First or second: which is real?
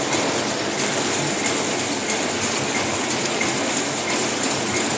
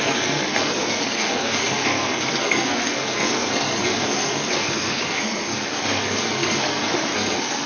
first